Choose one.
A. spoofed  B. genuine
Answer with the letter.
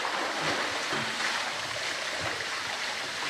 B